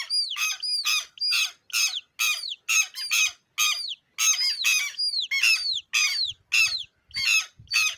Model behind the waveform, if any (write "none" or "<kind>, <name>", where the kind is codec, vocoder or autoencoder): none